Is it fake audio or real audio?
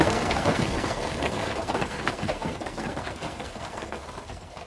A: fake